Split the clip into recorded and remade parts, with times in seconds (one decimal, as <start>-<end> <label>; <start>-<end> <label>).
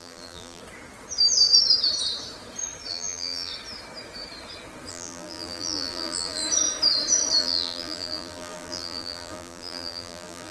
0.0-0.6 remade; 0.6-2.9 recorded; 2.9-3.5 remade; 3.5-4.9 recorded; 4.9-6.4 remade; 6.4-7.4 recorded; 7.4-10.5 remade